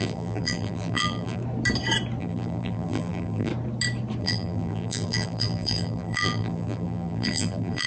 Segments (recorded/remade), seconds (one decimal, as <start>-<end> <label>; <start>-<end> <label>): 0.0-1.4 remade; 1.4-2.2 recorded; 2.2-3.5 remade; 3.5-4.2 recorded; 4.2-7.9 remade